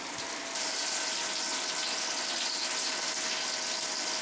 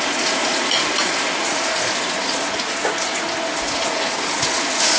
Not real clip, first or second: second